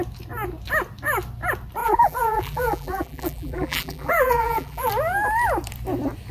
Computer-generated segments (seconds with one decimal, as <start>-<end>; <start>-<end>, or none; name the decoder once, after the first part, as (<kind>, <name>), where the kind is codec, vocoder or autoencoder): 1.8-4.9 (vocoder, BigVGAN v2)